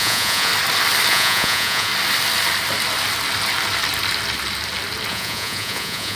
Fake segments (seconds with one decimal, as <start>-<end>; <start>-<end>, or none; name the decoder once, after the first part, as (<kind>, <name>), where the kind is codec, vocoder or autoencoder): 0.0-0.5 (vocoder, Vocos); 1.1-1.9; 5.1-6.2